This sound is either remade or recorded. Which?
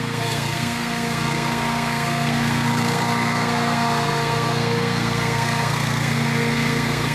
remade